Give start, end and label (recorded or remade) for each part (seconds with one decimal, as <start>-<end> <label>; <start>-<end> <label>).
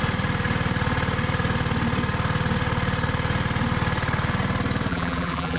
0.0-4.9 recorded; 4.9-5.6 remade